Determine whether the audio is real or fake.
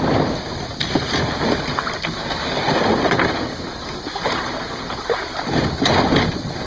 real